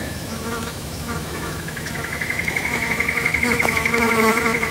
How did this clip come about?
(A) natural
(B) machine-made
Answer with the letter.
B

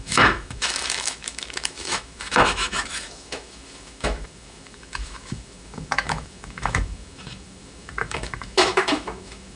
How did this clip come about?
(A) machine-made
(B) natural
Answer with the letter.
A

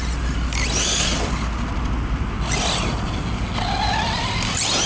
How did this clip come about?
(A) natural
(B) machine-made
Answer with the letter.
A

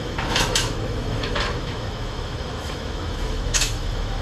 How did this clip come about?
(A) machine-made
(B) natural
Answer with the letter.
A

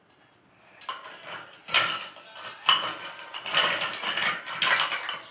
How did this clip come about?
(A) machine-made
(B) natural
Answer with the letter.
B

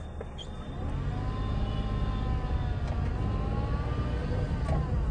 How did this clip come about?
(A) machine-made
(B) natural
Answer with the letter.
B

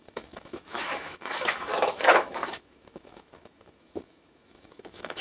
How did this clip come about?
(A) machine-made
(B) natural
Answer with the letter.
A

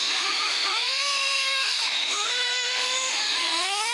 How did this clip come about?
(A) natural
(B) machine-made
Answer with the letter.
B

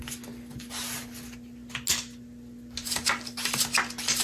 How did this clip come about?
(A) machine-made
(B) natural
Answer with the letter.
B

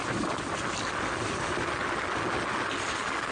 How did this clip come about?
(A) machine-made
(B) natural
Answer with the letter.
B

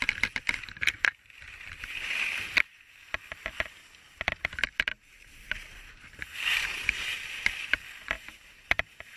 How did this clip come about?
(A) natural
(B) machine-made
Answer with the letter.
A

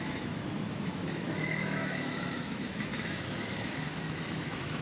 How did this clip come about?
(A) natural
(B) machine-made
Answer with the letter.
B